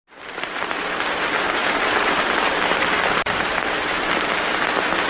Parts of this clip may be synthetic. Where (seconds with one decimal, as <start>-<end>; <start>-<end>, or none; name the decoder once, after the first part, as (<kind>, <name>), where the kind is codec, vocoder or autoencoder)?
none